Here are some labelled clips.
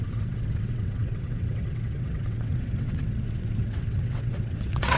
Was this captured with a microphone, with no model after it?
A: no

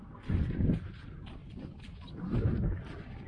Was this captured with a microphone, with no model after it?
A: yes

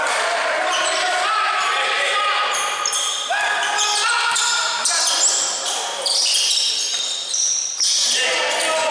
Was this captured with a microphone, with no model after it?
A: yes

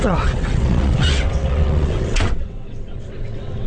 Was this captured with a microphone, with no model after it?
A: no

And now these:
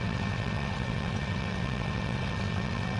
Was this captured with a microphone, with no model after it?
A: no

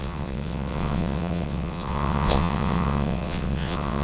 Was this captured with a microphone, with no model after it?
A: no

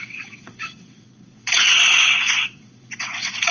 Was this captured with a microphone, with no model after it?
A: no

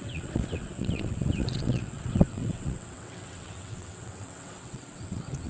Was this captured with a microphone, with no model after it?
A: no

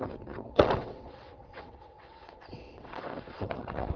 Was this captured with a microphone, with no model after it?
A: no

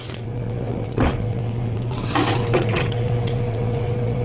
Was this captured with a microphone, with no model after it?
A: no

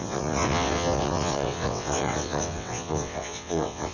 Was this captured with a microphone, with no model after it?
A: no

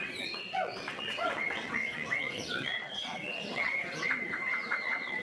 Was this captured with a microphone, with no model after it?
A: no